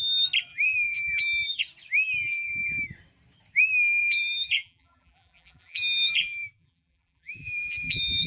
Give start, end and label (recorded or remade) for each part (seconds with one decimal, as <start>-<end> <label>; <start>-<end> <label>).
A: 0.0-0.5 recorded; 0.5-1.6 remade; 1.6-4.0 recorded; 4.0-8.3 remade